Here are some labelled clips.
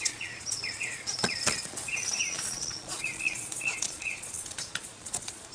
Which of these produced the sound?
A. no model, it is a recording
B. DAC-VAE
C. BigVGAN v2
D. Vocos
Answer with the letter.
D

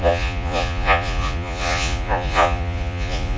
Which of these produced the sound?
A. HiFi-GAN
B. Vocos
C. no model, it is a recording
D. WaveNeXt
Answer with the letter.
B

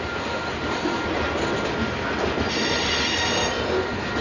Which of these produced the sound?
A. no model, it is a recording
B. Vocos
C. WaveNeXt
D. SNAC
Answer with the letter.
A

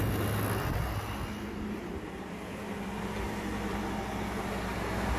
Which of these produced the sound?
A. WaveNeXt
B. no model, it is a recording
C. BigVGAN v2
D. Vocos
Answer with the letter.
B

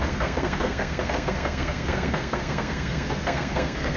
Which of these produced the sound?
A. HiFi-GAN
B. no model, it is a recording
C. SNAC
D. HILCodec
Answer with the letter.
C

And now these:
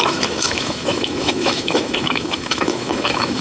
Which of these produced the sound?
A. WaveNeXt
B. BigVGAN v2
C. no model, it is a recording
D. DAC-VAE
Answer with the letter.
D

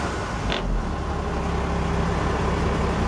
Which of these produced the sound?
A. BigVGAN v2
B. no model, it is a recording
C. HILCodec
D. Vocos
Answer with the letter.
B